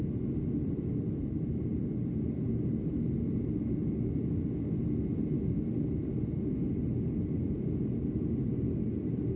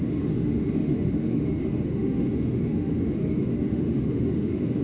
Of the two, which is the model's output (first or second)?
second